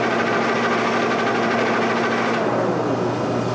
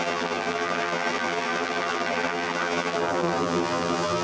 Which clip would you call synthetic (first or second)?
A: second